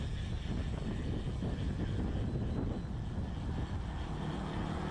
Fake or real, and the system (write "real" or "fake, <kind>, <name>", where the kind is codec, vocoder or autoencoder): real